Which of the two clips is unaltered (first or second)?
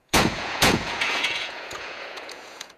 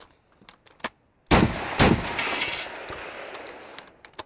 second